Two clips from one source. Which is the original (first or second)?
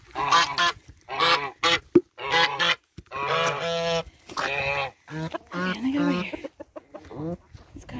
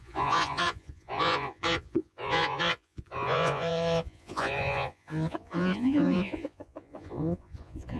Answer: first